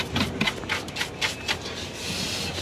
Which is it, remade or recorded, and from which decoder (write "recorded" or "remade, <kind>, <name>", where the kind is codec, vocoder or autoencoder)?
recorded